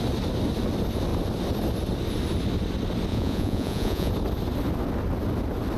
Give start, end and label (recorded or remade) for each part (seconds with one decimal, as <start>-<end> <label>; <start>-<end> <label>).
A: 0.0-3.1 recorded; 3.1-4.1 remade; 4.1-5.8 recorded